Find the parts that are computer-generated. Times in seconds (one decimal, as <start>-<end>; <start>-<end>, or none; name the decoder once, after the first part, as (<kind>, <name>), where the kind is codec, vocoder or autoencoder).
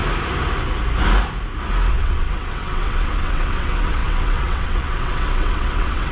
1.9-6.1 (vocoder, WaveNeXt)